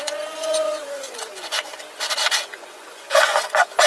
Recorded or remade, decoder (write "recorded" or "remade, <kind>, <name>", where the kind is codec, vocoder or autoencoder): remade, vocoder, Vocos